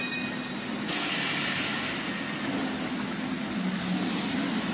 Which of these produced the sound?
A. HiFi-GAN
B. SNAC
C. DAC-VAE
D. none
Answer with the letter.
D